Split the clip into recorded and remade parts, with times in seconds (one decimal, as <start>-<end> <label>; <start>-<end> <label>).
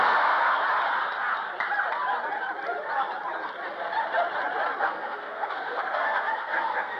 0.0-0.6 remade; 0.6-4.8 recorded; 4.8-7.0 remade